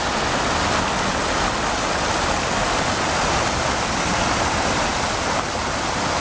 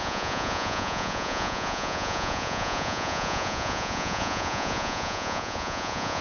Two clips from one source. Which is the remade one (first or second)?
second